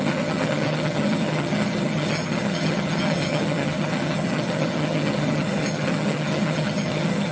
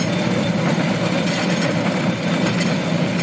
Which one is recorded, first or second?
second